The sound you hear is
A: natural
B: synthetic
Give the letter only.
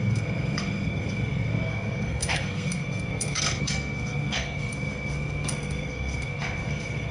B